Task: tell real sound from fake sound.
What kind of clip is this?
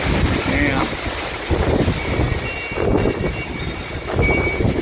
real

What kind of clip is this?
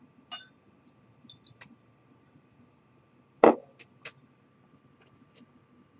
real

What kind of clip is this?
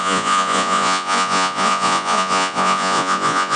fake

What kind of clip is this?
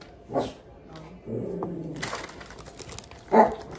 real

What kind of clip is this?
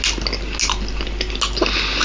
real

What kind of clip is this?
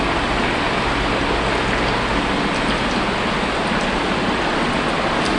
real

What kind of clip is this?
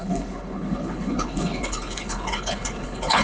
fake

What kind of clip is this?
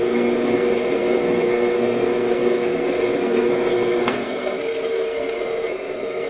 fake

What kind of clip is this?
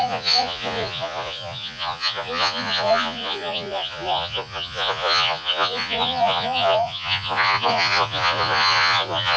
fake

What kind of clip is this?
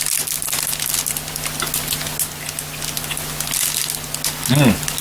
real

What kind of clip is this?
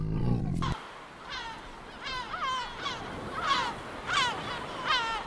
real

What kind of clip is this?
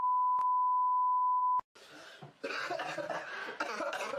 real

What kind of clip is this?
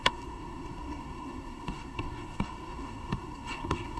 fake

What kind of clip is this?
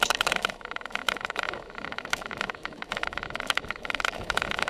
fake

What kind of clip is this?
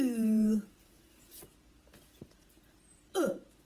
fake